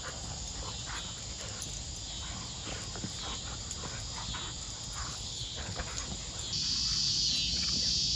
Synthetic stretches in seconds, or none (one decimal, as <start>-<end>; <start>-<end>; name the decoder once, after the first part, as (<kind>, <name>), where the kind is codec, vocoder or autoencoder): 5.0-5.8 (codec, HILCodec)